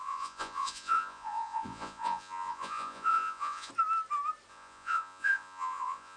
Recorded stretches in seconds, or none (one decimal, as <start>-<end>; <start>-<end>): 3.7-4.5